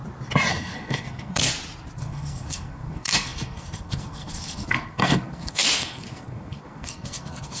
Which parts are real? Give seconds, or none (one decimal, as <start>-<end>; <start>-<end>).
0.0-0.5; 1.5-2.0

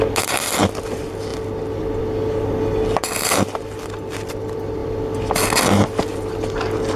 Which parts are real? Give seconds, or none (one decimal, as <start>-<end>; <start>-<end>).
0.0-7.0

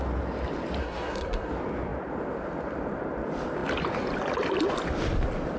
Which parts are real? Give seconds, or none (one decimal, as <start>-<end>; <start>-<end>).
0.0-0.8; 1.5-5.6

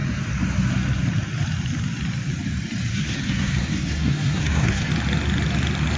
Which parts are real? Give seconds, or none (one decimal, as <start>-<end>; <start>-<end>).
0.0-2.9; 4.9-6.0

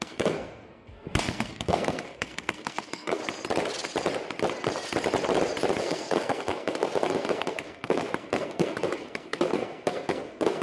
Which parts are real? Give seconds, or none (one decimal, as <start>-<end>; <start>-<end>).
3.2-5.8

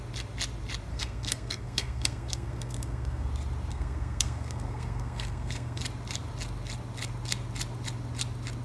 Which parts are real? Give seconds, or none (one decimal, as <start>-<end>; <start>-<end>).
0.0-0.9; 3.3-3.7; 5.8-8.6

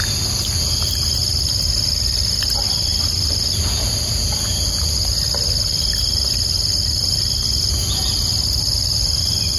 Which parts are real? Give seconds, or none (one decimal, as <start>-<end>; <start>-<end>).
0.0-9.6